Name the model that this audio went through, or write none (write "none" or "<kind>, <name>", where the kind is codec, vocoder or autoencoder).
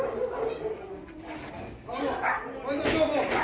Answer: none